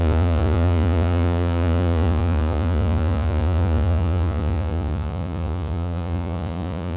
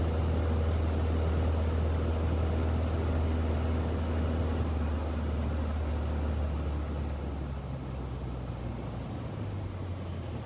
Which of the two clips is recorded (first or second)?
second